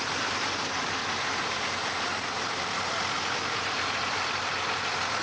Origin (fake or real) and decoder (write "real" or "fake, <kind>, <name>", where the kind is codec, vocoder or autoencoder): real